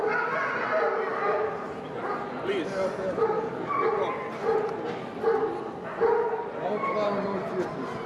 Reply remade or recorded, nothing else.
recorded